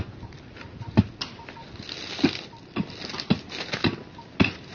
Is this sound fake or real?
real